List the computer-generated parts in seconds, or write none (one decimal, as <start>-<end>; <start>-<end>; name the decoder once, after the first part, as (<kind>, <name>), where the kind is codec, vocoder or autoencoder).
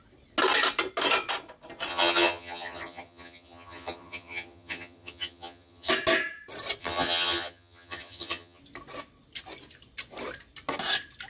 1.9-5.9 (vocoder, HiFi-GAN); 6.8-8.6